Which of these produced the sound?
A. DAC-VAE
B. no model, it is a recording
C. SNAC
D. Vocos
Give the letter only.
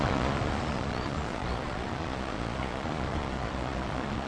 D